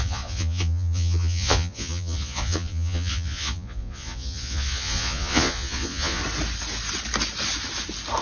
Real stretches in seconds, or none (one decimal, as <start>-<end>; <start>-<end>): 6.2-8.2